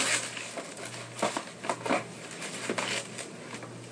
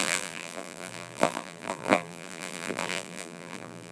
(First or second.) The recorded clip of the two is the first